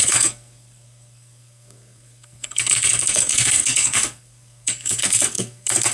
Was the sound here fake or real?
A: fake